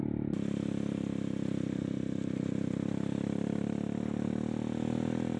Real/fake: real